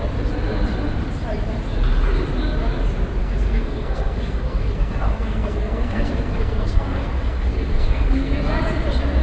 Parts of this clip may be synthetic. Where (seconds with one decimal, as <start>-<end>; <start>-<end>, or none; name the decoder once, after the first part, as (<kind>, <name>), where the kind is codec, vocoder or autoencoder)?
3.2-8.4 (codec, SNAC)